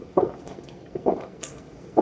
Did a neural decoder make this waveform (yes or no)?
yes